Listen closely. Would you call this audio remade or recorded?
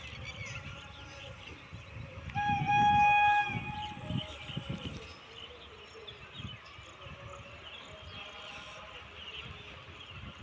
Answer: recorded